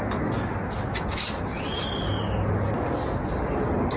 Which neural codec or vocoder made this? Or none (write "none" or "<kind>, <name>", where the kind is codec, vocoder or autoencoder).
none